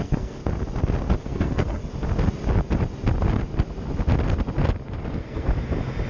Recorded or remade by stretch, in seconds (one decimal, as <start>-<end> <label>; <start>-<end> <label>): 0.0-0.4 remade; 0.4-1.2 recorded; 1.2-1.8 remade; 1.8-5.1 recorded; 5.1-5.5 remade; 5.5-6.1 recorded